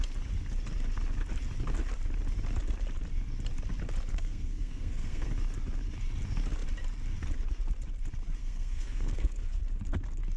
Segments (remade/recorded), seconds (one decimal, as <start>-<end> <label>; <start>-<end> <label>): 0.0-4.1 recorded; 4.1-5.3 remade; 5.3-8.4 recorded; 8.4-9.6 remade; 9.6-10.4 recorded